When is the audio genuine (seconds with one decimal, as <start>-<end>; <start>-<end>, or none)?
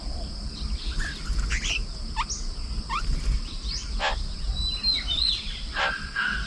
1.8-3.0